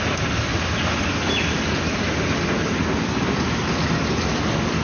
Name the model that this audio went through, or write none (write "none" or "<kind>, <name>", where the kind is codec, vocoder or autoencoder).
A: none